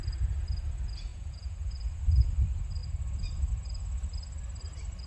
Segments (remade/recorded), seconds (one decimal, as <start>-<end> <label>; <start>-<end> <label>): 0.0-1.1 recorded; 1.1-1.7 remade; 1.7-5.1 recorded